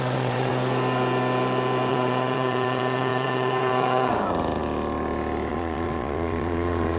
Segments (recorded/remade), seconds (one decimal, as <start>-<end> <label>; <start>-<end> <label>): 0.0-0.5 remade; 0.5-1.9 recorded; 1.9-4.1 remade; 4.1-5.5 recorded; 5.5-7.0 remade